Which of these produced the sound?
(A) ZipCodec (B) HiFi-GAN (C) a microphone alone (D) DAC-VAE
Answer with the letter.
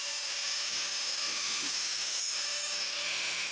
D